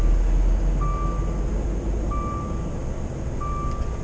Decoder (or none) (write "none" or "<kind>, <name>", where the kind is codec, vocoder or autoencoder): none